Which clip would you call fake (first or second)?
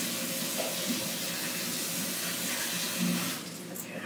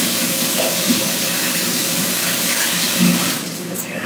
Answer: second